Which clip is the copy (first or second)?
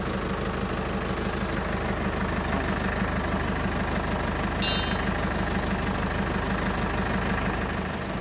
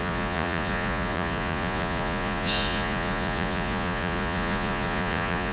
second